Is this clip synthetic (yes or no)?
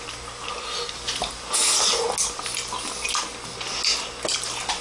no